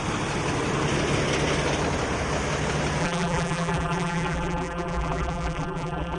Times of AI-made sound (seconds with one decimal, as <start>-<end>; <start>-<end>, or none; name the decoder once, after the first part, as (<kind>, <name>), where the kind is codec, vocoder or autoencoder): 3.0-6.2 (vocoder, BigVGAN v2)